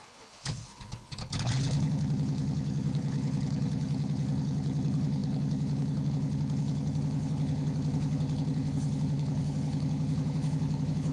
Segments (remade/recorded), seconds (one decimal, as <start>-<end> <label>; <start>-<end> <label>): 0.0-11.1 remade